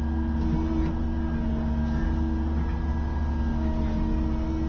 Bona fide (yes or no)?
yes